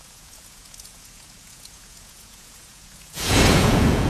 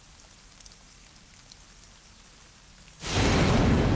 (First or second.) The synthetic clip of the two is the first